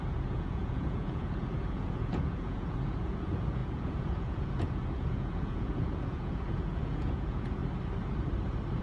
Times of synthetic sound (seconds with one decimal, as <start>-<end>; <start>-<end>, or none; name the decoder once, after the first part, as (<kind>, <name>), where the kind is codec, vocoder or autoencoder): 0.0-7.6 (vocoder, Vocos)